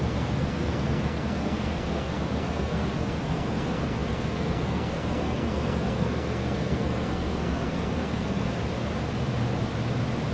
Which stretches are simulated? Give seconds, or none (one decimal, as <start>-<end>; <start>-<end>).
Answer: 0.0-8.6